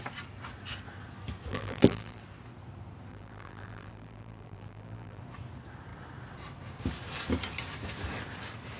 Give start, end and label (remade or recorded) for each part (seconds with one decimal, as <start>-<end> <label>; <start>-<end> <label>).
0.0-1.5 recorded; 1.5-2.2 remade; 2.2-3.1 recorded; 3.1-5.2 remade; 5.2-8.8 recorded